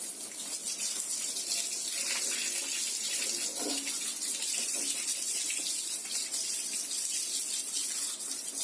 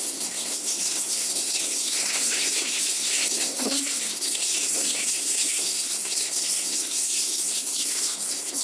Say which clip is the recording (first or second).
first